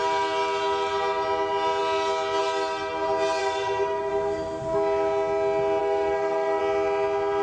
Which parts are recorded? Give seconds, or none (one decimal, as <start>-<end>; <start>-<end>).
0.0-3.4; 4.1-5.8; 6.6-7.4